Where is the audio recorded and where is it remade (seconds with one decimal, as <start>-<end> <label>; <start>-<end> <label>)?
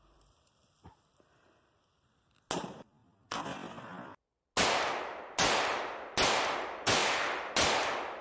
0.0-8.2 recorded